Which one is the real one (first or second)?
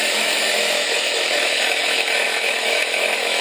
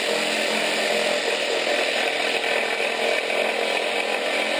second